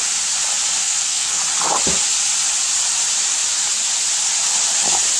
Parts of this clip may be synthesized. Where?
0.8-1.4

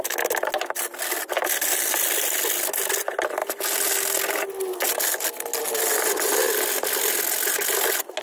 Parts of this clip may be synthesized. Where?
none

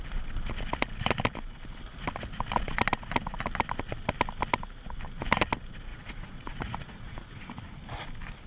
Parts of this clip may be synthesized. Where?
5.9-7.5

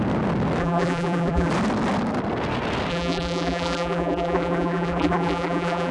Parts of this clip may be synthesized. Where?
0.6-1.5; 2.9-5.9

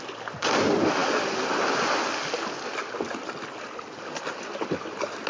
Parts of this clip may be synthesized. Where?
none

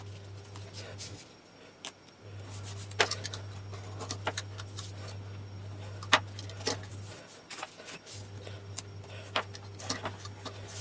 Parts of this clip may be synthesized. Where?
none

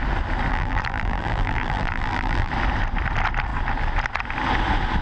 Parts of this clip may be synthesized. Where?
0.5-2.5

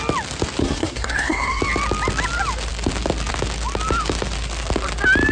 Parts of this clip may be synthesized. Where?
0.6-1.6